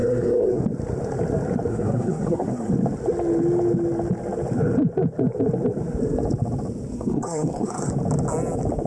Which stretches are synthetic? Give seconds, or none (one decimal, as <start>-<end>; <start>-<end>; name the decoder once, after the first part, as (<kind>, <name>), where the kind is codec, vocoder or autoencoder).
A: 0.0-0.6 (codec, SNAC); 1.7-2.7; 6.9-7.9